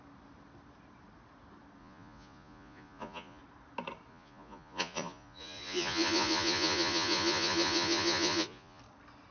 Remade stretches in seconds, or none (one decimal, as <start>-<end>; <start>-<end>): 1.8-3.4; 4.1-8.8